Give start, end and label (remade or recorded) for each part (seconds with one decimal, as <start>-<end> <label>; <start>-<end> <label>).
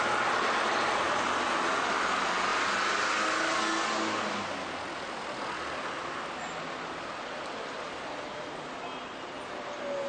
0.0-10.1 recorded